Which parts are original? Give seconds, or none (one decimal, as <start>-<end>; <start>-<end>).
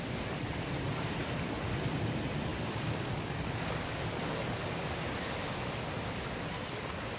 0.0-2.5; 4.3-7.2